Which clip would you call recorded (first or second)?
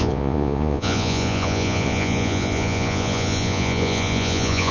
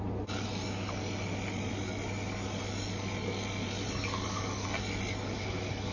second